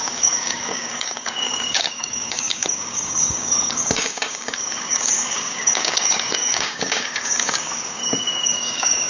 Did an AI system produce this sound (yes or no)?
yes